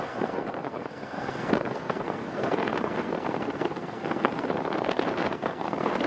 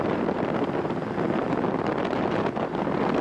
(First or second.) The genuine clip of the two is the second